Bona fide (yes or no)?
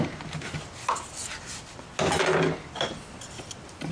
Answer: yes